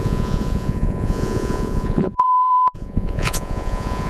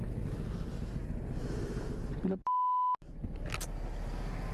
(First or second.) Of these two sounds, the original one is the second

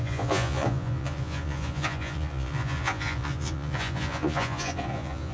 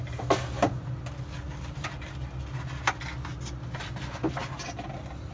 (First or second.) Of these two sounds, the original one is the second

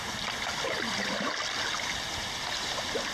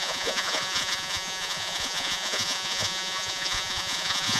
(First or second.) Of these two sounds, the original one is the first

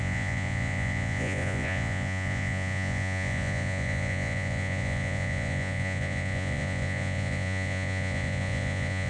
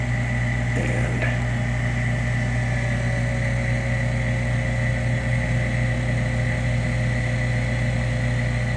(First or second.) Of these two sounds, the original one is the second